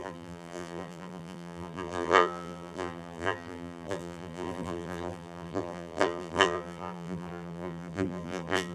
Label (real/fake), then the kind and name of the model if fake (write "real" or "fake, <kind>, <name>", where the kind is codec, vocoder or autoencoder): fake, vocoder, BigVGAN v2